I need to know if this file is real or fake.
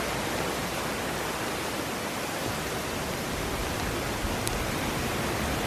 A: real